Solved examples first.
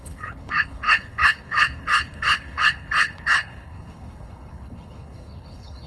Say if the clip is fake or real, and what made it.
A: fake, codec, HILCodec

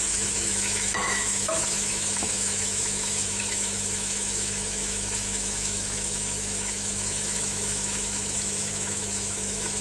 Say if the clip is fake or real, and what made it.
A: fake, autoencoder, DAC-VAE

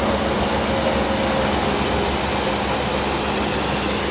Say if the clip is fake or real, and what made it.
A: real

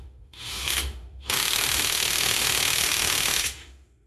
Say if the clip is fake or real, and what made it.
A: fake, autoencoder, DAC-VAE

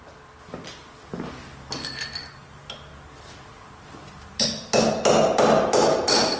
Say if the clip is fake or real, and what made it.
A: real